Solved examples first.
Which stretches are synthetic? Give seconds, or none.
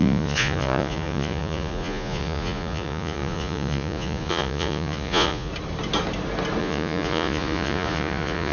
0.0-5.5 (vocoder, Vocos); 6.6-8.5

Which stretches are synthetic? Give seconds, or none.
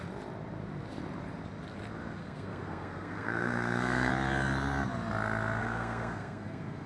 2.2-4.1 (codec, SNAC); 5.6-6.9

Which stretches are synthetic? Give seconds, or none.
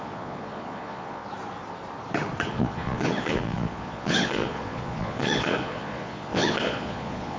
0.0-1.2 (vocoder, Vocos); 2.5-7.4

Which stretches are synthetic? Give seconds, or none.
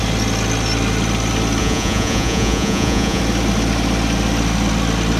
1.6-3.2 (vocoder, Vocos)